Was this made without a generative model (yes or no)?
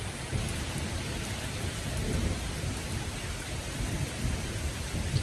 no